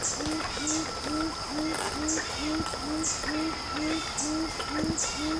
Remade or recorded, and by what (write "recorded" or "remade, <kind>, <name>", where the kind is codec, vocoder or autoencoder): recorded